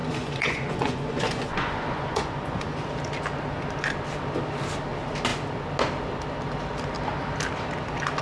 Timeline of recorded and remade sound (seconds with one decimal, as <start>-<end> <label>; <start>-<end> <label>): 0.0-2.8 remade; 2.8-8.2 recorded

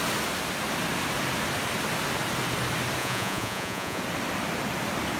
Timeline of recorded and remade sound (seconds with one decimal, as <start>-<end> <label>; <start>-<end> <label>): 0.0-3.0 recorded; 3.0-4.0 remade; 4.0-5.2 recorded

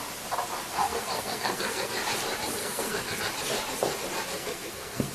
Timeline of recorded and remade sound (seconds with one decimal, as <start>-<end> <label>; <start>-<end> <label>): 0.0-0.7 recorded; 0.7-1.9 remade; 1.9-2.6 recorded; 2.6-3.2 remade; 3.2-4.3 recorded; 4.3-5.1 remade